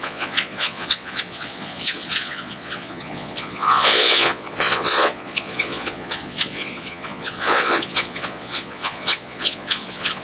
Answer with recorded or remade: remade